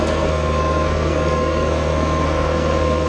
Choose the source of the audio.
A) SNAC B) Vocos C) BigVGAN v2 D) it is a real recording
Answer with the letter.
A